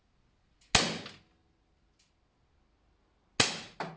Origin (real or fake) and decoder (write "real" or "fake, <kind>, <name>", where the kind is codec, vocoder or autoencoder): real